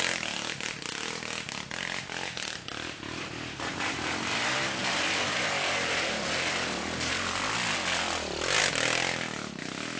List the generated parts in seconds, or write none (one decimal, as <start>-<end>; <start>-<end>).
none